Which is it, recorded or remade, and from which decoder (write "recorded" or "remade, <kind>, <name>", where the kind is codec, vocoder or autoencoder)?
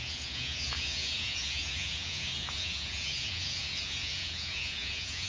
remade, vocoder, Vocos